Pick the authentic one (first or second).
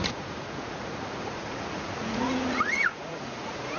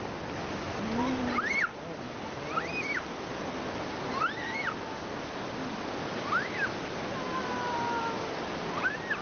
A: second